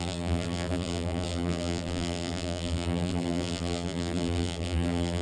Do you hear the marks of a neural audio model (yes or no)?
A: yes